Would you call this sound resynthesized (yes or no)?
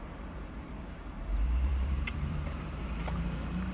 yes